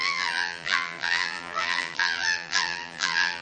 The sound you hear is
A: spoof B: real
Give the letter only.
A